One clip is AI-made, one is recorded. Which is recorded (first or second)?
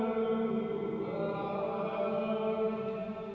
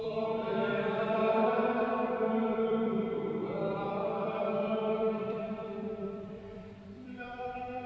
first